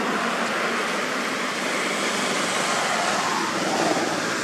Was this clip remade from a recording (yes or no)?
no